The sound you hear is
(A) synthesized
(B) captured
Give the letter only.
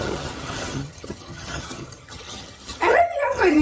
A